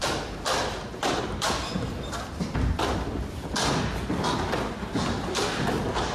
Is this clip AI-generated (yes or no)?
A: no